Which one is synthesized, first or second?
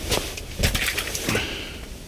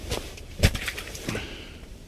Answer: second